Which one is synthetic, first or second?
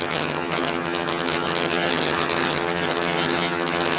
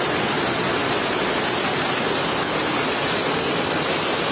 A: first